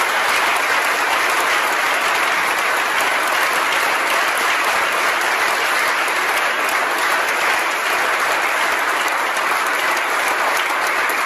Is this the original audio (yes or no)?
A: yes